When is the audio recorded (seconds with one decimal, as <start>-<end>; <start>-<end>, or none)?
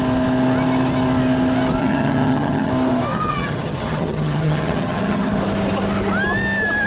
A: 0.0-1.8; 2.7-3.1; 5.4-6.9